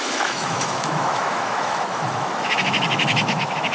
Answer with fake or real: fake